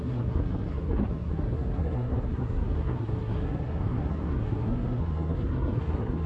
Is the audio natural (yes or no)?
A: no